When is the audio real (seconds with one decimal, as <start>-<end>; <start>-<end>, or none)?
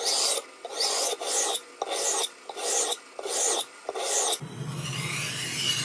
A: 0.0-0.7; 1.7-5.8